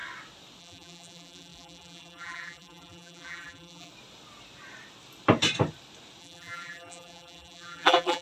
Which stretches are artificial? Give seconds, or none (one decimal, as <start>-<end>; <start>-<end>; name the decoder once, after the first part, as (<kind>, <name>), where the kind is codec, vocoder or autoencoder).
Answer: 0.6-3.9 (vocoder, BigVGAN v2); 6.2-8.2